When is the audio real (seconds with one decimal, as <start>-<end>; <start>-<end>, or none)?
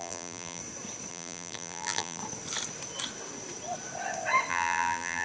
0.6-1.1; 2.2-4.5